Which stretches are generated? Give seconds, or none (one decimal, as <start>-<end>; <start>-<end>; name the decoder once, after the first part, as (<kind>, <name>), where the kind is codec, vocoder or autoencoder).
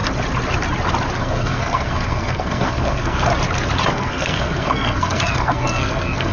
1.2-3.3 (codec, SNAC); 3.9-6.3